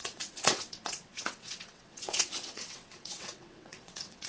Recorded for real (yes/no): no